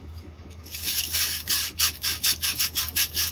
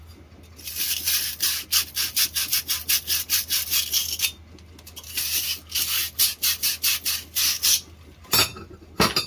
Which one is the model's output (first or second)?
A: first